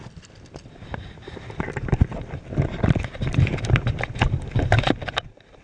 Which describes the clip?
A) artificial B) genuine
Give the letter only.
A